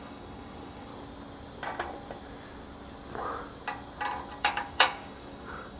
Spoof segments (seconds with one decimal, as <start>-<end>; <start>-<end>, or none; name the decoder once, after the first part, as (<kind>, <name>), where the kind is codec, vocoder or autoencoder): 0.0-0.9 (codec, DAC); 4.4-5.8